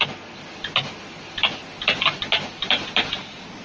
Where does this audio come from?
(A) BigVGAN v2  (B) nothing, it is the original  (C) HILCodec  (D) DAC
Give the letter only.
B